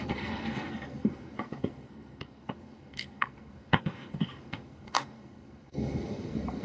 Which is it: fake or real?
fake